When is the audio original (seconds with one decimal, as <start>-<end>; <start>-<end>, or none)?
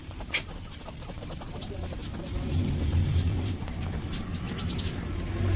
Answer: 2.0-2.8; 4.3-5.1